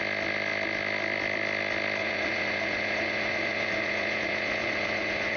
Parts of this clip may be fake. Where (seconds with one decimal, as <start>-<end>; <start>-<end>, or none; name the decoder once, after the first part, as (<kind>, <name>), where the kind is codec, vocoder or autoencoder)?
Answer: 2.0-5.4 (vocoder, Vocos)